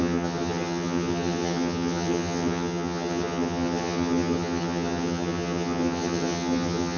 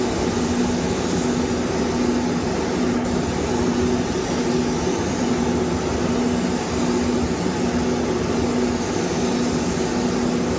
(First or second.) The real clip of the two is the second